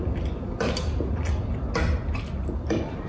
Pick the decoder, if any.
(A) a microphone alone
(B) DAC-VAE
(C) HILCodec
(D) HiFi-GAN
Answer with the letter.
A